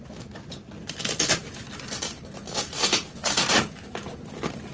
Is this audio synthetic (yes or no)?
no